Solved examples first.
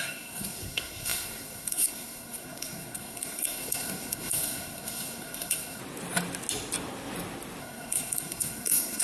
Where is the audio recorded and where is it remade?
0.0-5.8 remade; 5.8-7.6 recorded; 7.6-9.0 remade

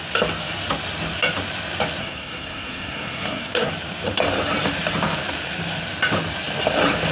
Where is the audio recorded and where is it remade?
0.0-2.0 recorded; 2.0-3.7 remade; 3.7-7.1 recorded

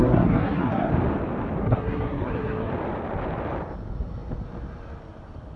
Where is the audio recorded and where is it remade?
0.0-0.9 remade; 0.9-1.6 recorded; 1.6-2.7 remade; 2.7-5.6 recorded

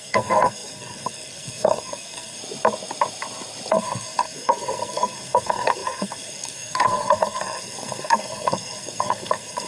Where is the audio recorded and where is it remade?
0.0-2.4 remade; 2.4-3.7 recorded; 3.7-9.7 remade

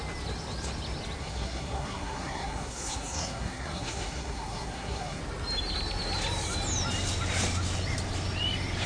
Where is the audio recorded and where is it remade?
0.0-1.2 recorded; 1.2-5.2 remade; 5.2-8.9 recorded